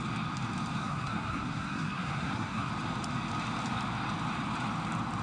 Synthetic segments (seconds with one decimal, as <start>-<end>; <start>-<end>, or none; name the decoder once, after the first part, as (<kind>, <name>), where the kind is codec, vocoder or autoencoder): 0.8-2.7 (codec, SNAC)